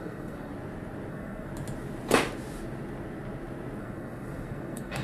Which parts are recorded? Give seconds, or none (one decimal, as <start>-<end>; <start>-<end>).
0.5-1.1; 1.5-3.8